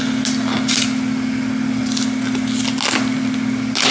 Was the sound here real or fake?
real